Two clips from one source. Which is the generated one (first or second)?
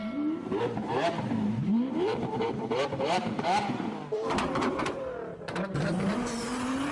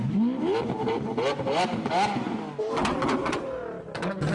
first